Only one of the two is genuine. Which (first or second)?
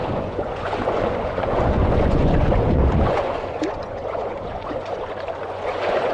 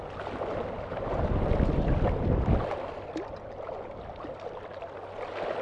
second